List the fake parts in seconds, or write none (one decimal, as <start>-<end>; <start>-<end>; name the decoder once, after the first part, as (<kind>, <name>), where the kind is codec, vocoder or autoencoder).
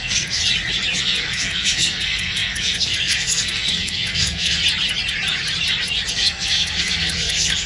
0.0-0.4 (codec, SNAC); 1.0-4.6; 6.1-7.7